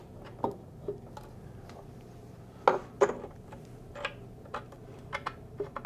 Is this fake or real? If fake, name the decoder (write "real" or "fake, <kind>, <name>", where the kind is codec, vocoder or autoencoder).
real